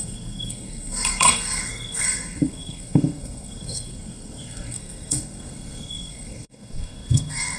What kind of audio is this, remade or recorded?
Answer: remade